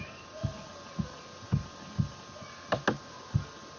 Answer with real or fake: real